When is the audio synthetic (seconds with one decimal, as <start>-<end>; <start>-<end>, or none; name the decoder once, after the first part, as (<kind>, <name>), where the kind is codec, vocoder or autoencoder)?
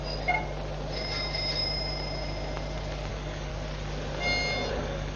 3.1-3.5 (codec, DAC); 4.7-5.2